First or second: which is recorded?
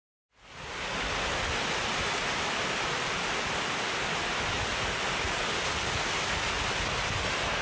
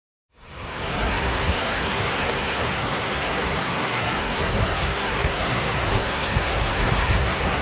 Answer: first